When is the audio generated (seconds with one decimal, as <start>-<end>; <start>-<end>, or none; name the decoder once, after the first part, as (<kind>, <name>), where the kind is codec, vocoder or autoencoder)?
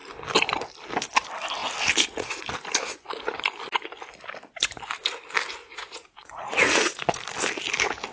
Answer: 5.6-7.0 (vocoder, Vocos)